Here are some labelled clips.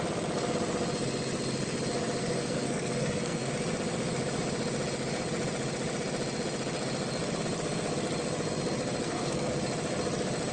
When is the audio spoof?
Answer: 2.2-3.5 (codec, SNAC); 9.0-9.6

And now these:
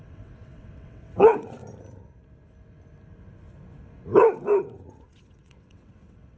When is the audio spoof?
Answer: 0.0-1.6 (vocoder, WaveNeXt); 5.0-6.4

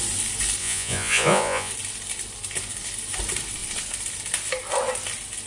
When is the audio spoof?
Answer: 0.6-1.7 (vocoder, Vocos)

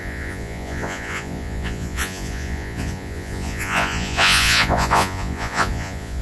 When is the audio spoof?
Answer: 0.0-6.2 (vocoder, Vocos)

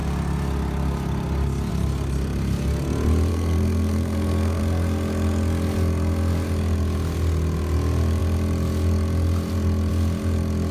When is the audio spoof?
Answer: 3.3-4.6 (codec, SNAC)

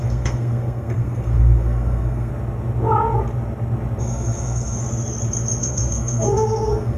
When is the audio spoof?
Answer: 0.0-2.3 (codec, SNAC); 4.0-4.8; 5.6-7.0

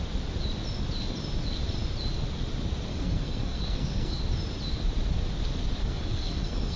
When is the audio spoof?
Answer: 2.9-4.2 (codec, SNAC); 5.8-6.8

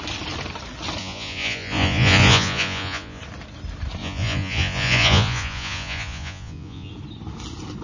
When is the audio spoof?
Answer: 1.0-3.2 (vocoder, Vocos); 4.0-6.9